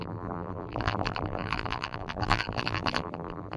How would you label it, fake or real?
fake